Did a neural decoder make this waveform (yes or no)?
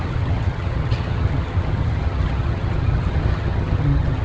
yes